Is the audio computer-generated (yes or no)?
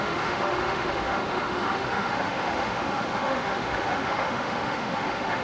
yes